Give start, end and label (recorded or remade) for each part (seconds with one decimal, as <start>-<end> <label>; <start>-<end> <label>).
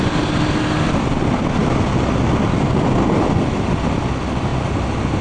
0.0-5.2 recorded